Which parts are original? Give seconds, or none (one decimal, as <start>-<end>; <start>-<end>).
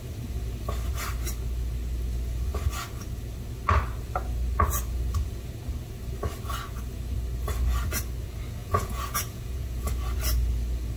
0.0-8.6; 9.9-11.0